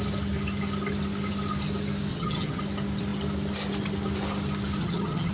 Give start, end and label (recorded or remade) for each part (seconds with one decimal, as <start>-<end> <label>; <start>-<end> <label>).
0.0-2.1 recorded; 2.1-2.6 remade; 2.6-4.8 recorded; 4.8-5.3 remade